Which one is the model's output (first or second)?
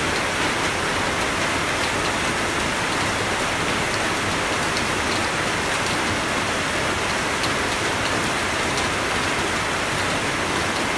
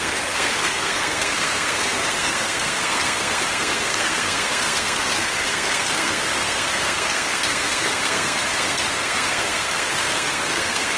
second